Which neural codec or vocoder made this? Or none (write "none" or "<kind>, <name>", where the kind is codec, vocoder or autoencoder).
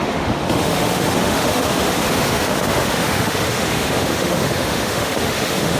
autoencoder, DAC-VAE